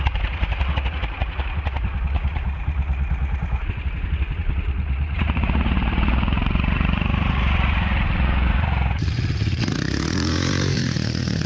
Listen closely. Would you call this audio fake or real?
fake